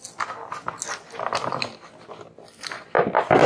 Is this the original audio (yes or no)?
yes